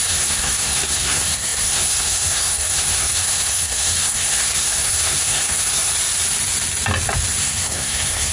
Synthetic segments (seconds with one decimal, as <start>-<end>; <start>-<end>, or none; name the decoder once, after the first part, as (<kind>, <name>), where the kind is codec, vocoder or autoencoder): 0.0-5.9 (codec, SNAC); 7.4-8.3